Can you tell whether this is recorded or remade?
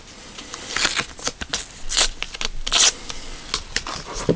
recorded